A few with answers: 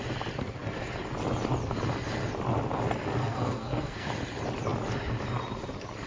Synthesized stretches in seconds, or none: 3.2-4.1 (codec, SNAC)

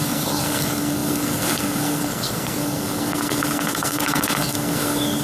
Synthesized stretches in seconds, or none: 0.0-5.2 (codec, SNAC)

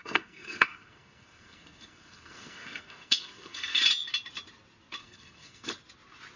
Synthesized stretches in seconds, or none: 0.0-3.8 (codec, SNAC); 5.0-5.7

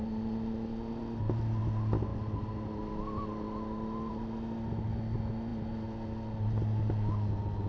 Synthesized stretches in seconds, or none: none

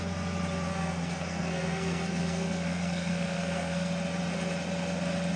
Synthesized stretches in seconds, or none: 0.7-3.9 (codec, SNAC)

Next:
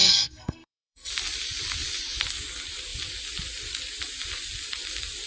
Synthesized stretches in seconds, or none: 0.0-1.1 (codec, SNAC)